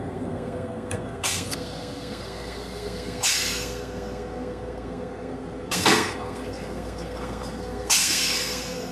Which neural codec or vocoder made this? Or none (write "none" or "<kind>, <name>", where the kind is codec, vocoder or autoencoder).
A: codec, SNAC